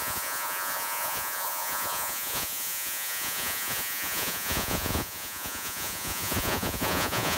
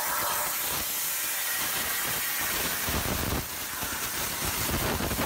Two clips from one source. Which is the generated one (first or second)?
first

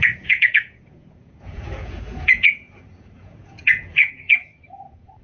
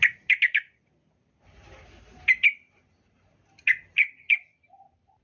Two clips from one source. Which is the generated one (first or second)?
first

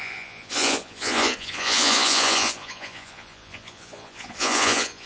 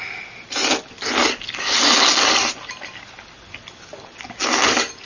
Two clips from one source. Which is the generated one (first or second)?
first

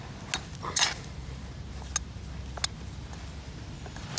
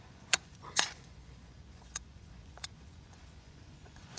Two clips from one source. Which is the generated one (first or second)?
second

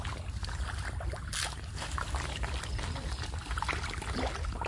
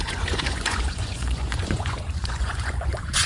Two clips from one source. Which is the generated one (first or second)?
second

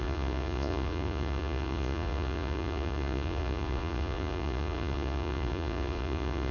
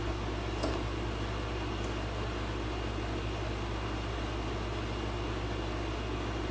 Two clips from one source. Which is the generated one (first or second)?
first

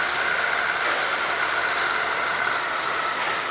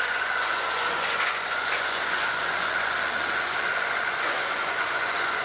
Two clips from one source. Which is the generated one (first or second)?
second